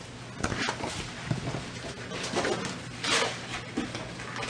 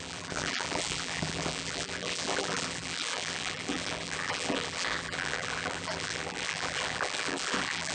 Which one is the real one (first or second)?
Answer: first